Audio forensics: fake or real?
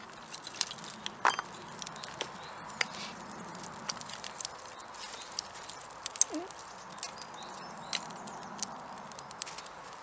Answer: real